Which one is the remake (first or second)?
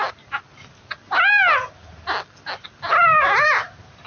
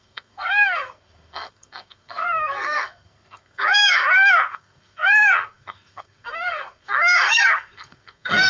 second